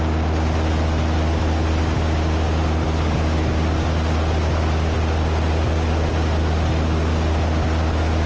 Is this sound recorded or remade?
recorded